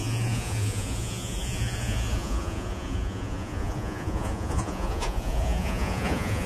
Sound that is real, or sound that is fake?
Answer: fake